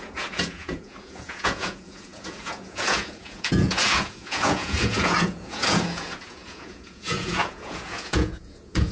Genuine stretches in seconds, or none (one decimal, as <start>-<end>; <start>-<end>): none